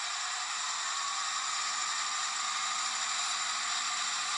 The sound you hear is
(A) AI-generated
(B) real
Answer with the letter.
B